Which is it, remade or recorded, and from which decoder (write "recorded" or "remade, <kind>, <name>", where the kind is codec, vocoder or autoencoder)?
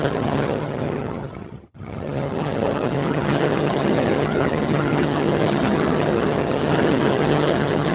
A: remade, vocoder, HiFi-GAN